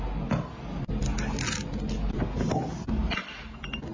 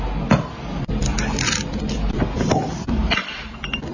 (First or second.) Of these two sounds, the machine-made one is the second